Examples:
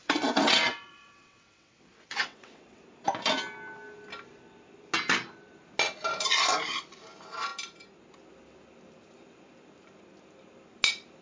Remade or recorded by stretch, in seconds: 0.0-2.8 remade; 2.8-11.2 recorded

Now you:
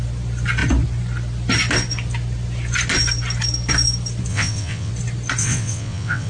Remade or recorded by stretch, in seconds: 0.0-4.3 recorded; 4.3-4.9 remade; 4.9-5.4 recorded; 5.4-6.3 remade

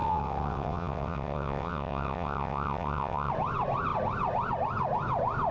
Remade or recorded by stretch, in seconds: 0.0-3.3 remade; 3.3-5.5 recorded

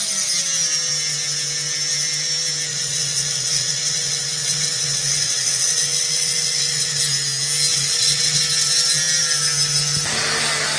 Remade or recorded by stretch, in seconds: 0.0-2.7 recorded; 2.7-7.0 remade; 7.0-7.7 recorded; 7.7-8.4 remade; 8.4-10.8 recorded

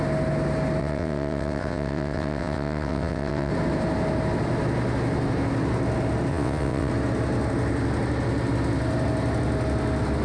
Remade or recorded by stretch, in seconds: 0.0-0.8 recorded; 0.8-3.5 remade; 3.5-6.3 recorded; 6.3-6.9 remade; 6.9-10.2 recorded

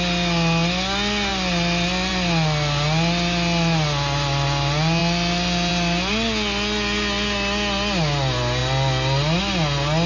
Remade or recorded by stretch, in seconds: 0.0-10.1 recorded

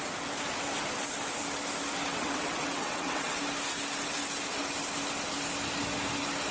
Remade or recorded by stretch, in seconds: 0.0-2.1 recorded; 2.1-3.4 remade; 3.4-6.5 recorded

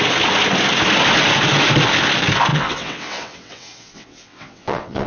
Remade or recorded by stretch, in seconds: 0.0-2.5 recorded; 2.5-5.1 remade